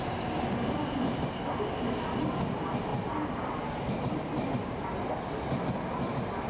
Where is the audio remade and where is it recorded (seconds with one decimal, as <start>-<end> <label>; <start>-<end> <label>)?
0.0-6.5 recorded

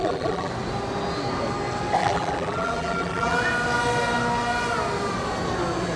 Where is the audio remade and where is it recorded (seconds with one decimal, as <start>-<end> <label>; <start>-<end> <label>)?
0.0-0.5 remade; 0.5-2.0 recorded; 2.0-3.4 remade; 3.4-6.0 recorded

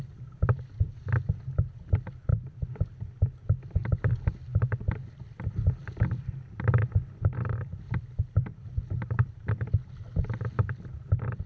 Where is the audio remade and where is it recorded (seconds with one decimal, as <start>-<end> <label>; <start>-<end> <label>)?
0.0-11.5 recorded